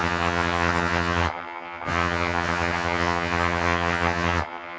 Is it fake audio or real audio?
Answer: fake